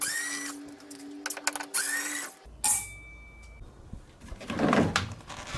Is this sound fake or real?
real